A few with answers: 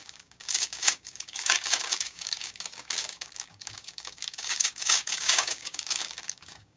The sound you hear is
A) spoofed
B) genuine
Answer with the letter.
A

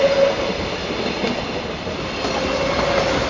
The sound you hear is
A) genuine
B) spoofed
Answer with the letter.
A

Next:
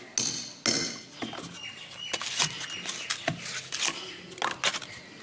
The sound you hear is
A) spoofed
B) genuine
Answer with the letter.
B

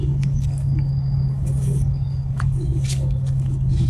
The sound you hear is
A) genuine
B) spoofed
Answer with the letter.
B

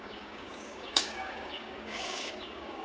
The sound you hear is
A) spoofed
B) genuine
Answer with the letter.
A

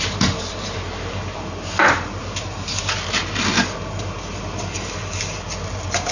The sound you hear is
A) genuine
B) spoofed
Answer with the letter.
A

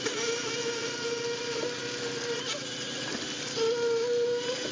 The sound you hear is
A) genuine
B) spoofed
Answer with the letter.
A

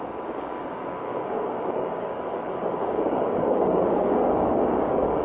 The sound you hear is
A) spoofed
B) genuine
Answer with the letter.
A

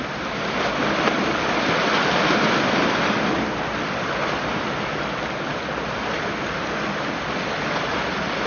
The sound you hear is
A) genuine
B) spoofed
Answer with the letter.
A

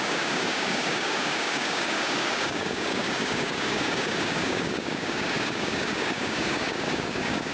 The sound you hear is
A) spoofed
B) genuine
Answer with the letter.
A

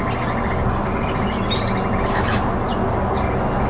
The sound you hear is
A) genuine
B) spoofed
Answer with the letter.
A